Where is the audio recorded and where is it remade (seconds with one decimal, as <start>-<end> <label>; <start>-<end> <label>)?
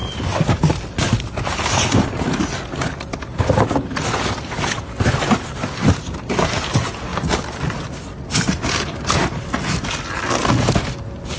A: 0.0-11.4 recorded